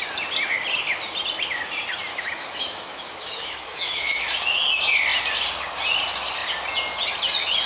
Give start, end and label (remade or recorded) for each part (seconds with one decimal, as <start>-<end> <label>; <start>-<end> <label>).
0.0-2.1 recorded; 2.1-4.2 remade; 4.2-7.7 recorded